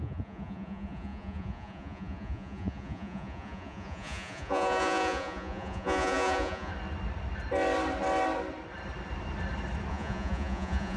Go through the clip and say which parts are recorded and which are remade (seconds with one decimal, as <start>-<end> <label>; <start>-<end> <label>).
0.0-6.7 remade; 6.7-9.9 recorded; 9.9-11.0 remade